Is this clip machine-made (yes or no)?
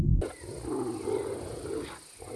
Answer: no